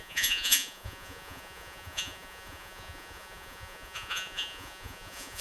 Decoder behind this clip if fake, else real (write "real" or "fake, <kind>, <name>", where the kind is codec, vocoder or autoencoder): fake, vocoder, Vocos